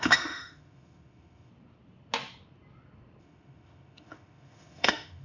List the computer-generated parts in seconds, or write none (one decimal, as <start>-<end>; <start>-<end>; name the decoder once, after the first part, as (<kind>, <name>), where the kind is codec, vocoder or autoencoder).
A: 0.0-1.5 (autoencoder, DAC-VAE); 3.2-5.2